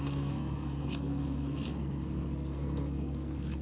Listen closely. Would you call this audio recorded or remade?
remade